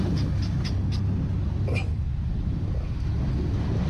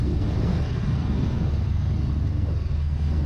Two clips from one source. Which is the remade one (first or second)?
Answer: second